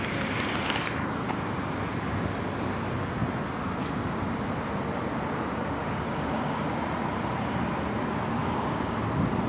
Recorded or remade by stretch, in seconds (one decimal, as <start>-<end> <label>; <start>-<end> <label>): 0.0-5.8 recorded; 5.8-6.6 remade; 6.6-8.4 recorded; 8.4-9.0 remade; 9.0-9.5 recorded